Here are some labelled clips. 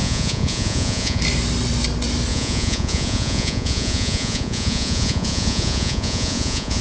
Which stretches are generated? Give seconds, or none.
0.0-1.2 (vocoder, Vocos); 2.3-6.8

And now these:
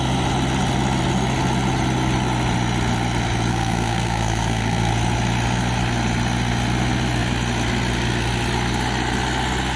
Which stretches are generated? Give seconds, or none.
3.5-4.9 (codec, SNAC)

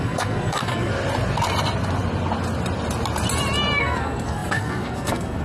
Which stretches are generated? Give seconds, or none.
0.0-0.9 (codec, SNAC); 3.8-5.4

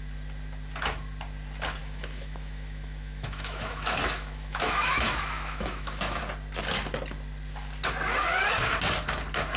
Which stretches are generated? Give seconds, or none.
1.8-6.2 (autoencoder, DAC-VAE)

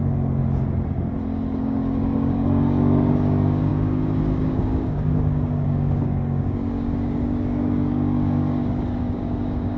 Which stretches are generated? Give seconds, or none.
0.0-0.4 (codec, DAC); 1.6-9.8

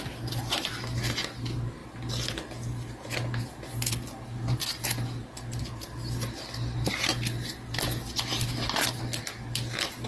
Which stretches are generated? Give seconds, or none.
none

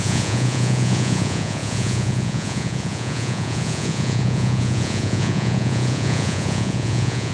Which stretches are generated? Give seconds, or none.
0.0-7.3 (vocoder, Vocos)